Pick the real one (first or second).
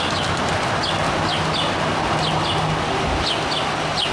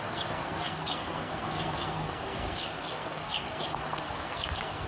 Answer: first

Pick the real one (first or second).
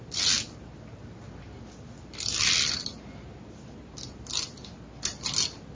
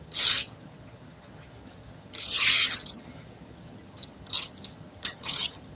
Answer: first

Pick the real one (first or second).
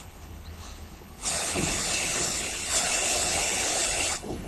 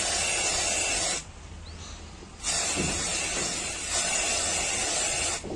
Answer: second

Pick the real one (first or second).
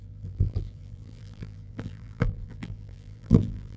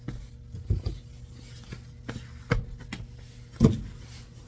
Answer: second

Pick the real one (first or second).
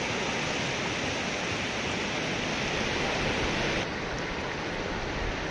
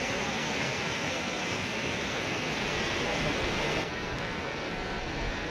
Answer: first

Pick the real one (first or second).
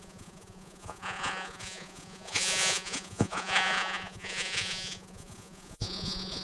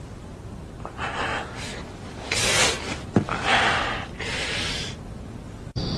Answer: second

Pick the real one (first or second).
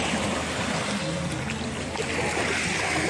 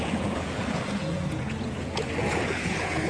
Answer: first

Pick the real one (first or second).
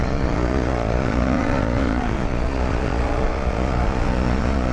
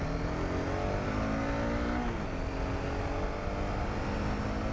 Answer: second